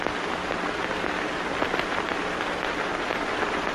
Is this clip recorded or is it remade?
recorded